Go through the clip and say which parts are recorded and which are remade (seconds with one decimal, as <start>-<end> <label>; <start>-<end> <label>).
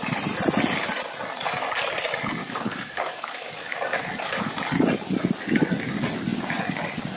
0.0-2.4 recorded; 2.4-4.6 remade; 4.6-7.2 recorded